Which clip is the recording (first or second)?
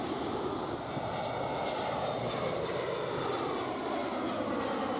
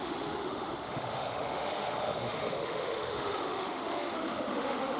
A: first